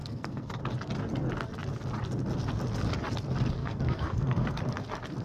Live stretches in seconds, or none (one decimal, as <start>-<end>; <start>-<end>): 0.6-3.6; 4.6-5.2